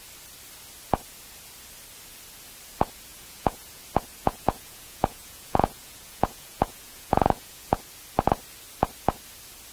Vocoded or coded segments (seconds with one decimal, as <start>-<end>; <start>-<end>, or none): 3.1-3.8; 4.2-7.8